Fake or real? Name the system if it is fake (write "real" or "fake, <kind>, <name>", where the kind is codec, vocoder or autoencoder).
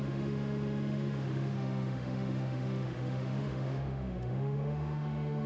fake, autoencoder, DAC-VAE